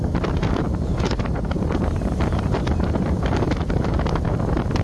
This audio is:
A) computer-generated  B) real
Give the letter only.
A